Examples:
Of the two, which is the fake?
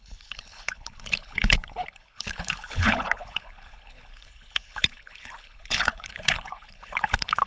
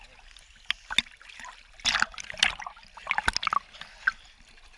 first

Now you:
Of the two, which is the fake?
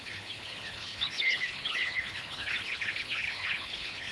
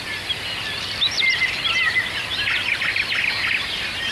first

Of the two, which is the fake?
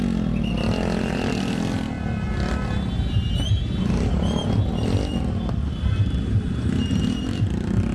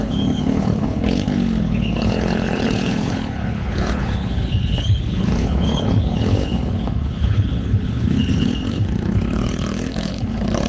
second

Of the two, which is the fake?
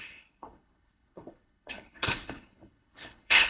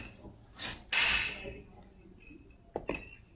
first